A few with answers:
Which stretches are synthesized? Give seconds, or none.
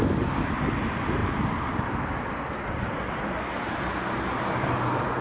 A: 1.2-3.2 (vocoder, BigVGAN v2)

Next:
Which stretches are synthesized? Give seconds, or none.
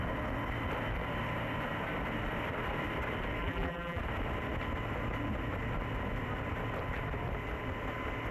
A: 3.4-4.0 (vocoder, BigVGAN v2)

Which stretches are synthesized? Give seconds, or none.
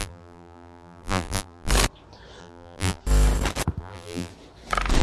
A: 0.0-1.7 (vocoder, BigVGAN v2); 2.4-3.0; 3.8-4.3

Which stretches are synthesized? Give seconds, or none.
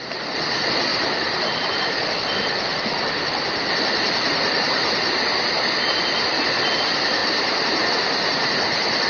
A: 0.9-2.1 (vocoder, BigVGAN v2)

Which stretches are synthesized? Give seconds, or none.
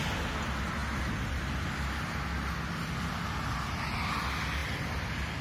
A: none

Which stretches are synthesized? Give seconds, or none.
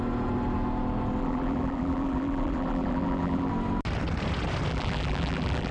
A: 1.2-3.5 (vocoder, BigVGAN v2); 4.7-5.7